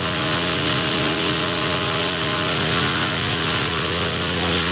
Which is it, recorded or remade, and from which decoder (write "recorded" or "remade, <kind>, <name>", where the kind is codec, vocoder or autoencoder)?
remade, vocoder, Vocos